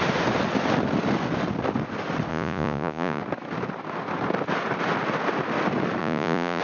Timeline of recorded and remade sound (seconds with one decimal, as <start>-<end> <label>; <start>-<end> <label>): 0.0-2.3 recorded; 2.3-3.2 remade; 3.2-6.0 recorded; 6.0-6.6 remade